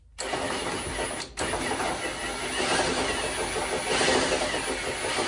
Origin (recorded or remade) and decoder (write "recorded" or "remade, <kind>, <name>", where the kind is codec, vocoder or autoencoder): recorded